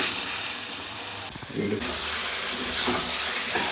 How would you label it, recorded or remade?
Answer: remade